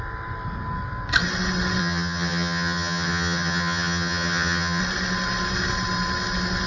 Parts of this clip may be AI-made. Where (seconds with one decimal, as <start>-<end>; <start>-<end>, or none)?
1.8-4.8

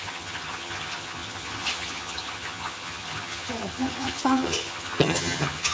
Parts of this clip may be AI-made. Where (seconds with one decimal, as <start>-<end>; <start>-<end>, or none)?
0.0-5.7